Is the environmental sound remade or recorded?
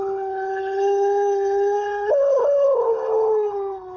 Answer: remade